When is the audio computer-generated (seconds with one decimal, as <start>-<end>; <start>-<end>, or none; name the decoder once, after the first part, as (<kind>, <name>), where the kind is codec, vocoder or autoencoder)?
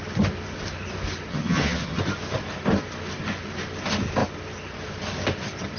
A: 1.3-2.0 (vocoder, HiFi-GAN)